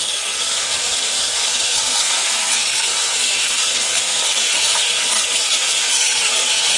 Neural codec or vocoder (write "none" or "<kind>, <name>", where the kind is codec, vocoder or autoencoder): codec, SNAC